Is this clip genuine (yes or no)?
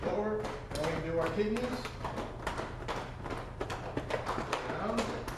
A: yes